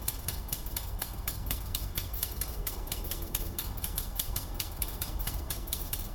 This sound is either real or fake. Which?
fake